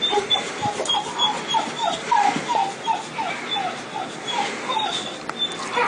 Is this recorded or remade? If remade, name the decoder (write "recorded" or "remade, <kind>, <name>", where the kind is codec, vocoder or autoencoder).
recorded